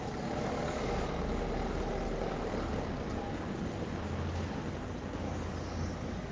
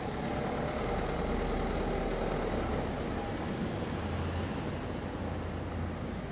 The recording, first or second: second